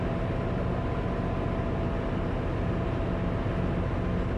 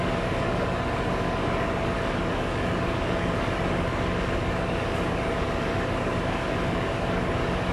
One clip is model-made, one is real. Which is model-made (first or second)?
second